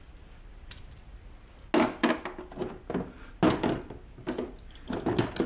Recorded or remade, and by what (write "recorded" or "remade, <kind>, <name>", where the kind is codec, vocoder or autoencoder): recorded